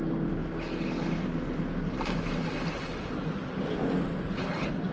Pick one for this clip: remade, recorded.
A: recorded